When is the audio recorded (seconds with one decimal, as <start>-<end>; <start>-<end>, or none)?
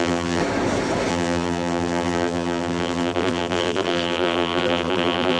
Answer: 0.4-1.1